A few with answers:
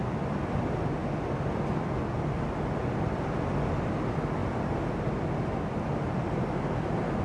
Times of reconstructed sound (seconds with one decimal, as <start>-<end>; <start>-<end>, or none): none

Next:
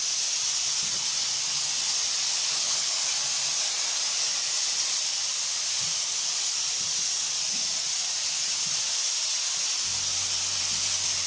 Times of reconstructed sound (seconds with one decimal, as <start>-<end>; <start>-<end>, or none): 2.3-3.1

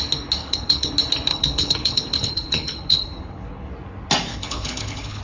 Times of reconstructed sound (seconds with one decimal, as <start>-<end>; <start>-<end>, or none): 0.4-0.9; 1.3-3.7; 4.3-5.2

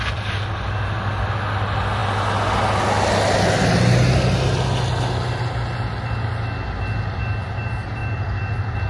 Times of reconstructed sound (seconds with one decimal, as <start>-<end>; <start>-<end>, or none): none

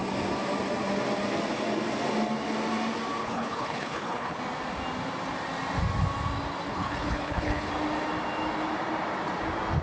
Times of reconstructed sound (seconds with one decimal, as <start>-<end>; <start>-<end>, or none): 3.2-4.4; 6.7-7.7

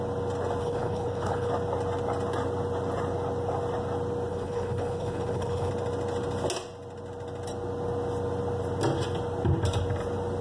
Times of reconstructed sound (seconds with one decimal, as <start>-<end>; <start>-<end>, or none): 0.6-1.5; 4.3-5.7

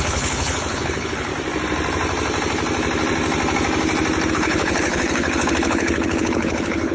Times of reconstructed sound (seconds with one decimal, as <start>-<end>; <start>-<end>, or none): 0.0-1.3; 4.3-6.9